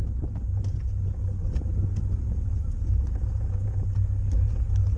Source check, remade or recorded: recorded